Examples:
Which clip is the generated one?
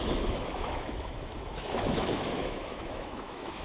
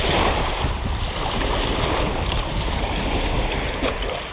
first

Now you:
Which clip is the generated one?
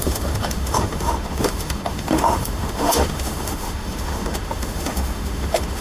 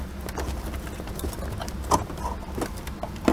first